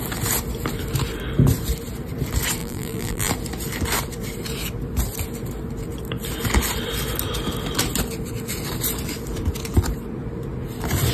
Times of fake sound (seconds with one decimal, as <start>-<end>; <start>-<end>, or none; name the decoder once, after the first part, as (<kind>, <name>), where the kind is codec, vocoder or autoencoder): 2.6-3.3 (vocoder, BigVGAN v2)